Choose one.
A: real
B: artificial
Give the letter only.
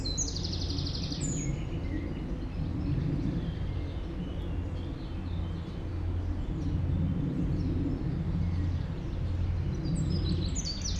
A